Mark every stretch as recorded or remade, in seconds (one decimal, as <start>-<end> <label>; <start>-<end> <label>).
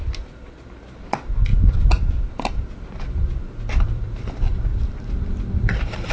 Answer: 0.0-1.5 remade; 1.5-3.9 recorded; 3.9-6.1 remade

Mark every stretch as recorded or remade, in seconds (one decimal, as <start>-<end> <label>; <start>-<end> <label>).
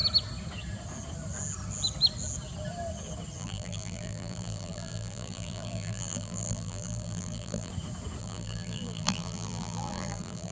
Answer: 0.0-3.4 recorded; 3.4-7.7 remade; 7.7-8.2 recorded; 8.2-10.5 remade